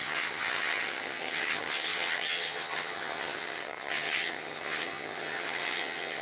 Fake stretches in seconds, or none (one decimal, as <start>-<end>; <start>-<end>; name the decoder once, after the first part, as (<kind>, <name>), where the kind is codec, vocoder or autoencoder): 0.0-6.2 (vocoder, HiFi-GAN)